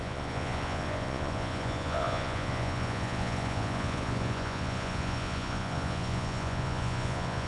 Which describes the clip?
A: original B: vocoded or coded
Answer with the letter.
B